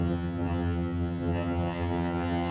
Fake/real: fake